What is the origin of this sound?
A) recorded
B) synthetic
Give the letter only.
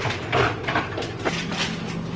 A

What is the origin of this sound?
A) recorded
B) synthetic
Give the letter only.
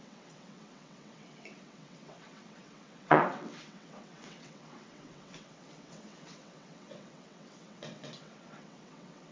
B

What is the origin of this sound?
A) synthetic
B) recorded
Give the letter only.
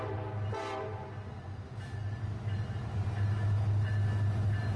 B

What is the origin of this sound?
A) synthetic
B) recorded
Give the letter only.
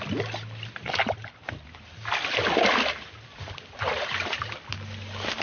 B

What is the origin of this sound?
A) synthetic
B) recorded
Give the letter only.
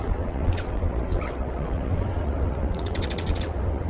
A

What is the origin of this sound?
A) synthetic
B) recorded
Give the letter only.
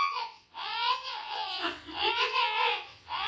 A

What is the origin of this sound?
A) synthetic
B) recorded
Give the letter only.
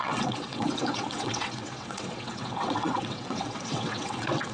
A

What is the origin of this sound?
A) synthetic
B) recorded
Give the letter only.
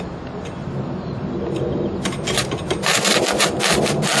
B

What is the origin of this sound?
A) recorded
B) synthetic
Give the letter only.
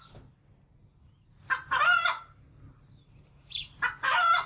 A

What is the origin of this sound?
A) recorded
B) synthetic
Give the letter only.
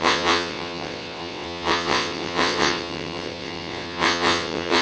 B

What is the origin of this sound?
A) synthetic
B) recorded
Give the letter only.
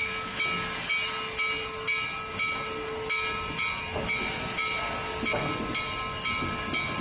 B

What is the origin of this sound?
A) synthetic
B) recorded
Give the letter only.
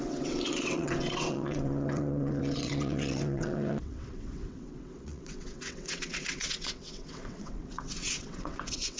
A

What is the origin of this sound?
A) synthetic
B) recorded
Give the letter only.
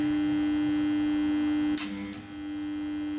B